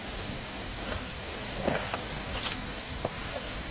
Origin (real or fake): fake